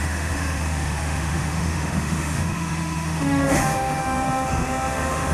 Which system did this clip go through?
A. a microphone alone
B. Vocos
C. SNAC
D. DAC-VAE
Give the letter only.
D